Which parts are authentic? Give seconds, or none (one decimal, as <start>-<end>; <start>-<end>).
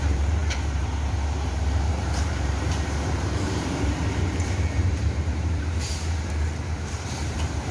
none